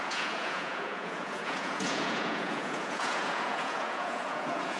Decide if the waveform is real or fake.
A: fake